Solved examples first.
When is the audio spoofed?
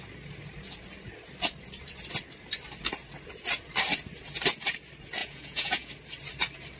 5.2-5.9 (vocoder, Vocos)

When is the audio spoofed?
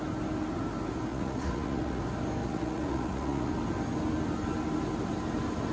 1.1-2.0 (vocoder, Vocos); 2.4-3.5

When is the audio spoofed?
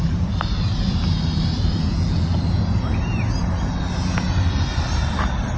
0.0-1.9 (vocoder, BigVGAN v2)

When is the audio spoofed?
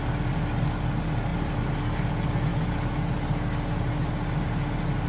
none